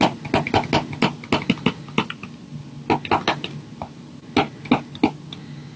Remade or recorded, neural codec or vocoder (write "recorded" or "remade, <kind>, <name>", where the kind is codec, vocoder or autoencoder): recorded